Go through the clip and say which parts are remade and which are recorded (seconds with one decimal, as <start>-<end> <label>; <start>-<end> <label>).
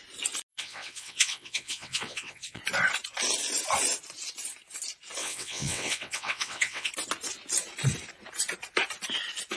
0.0-0.5 recorded; 0.5-2.6 remade; 2.6-5.2 recorded; 5.2-6.9 remade; 6.9-9.6 recorded